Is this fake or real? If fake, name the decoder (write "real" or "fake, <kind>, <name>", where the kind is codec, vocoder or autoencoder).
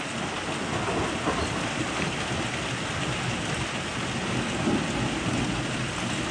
real